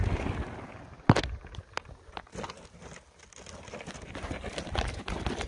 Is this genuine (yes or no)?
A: yes